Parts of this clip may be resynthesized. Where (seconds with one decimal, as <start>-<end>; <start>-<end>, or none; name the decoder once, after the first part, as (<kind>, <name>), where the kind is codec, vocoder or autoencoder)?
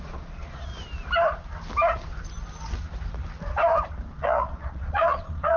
0.0-0.7 (vocoder, Vocos); 4.1-5.6